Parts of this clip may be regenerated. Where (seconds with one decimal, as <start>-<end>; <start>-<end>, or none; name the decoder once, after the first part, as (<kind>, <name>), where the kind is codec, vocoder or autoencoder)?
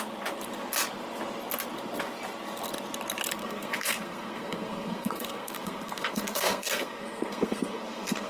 3.4-8.3 (codec, SNAC)